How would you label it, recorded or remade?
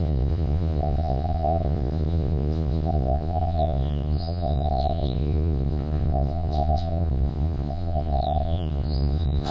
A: remade